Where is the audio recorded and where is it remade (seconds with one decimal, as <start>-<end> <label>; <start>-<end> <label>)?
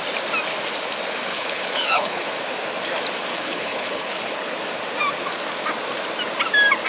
0.0-1.3 recorded; 1.3-2.3 remade; 2.3-3.3 recorded; 3.3-4.5 remade; 4.5-6.9 recorded